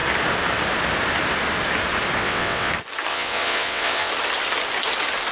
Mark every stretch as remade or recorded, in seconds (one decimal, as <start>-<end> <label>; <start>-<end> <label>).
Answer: 0.0-2.2 recorded; 2.2-2.7 remade; 2.7-3.1 recorded; 3.1-4.1 remade; 4.1-5.3 recorded